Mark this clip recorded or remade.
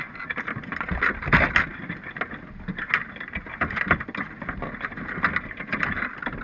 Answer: recorded